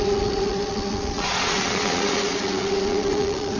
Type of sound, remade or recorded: remade